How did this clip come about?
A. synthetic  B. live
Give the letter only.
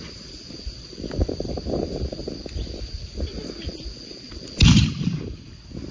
B